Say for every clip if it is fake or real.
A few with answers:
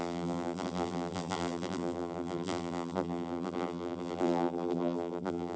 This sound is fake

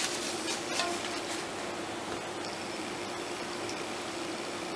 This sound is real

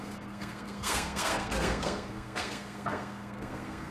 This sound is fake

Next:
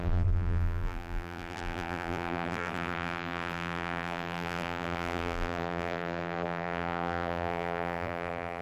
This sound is fake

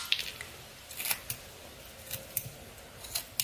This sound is real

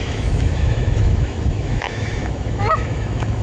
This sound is fake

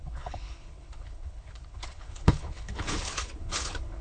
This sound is fake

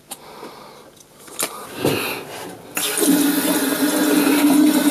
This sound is real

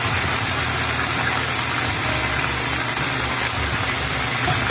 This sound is fake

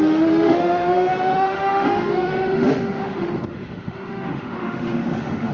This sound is fake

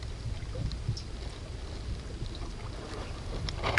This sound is real